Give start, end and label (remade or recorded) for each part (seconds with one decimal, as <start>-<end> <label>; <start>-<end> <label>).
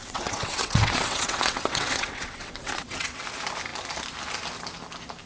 0.0-3.2 remade; 3.2-5.3 recorded